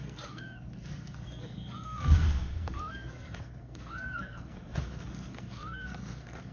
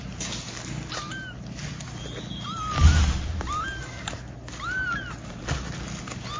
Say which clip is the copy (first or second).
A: first